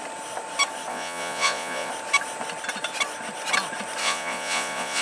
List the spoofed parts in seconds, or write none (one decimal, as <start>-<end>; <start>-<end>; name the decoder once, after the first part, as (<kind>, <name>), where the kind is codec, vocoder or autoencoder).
0.9-1.9 (vocoder, Vocos); 4.0-5.0